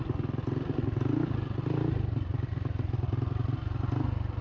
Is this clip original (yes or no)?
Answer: yes